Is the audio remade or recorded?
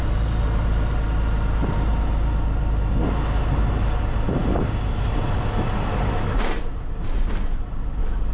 recorded